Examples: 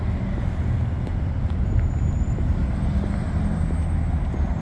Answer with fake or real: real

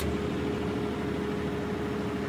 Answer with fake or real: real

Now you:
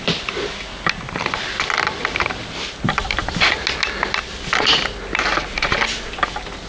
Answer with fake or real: real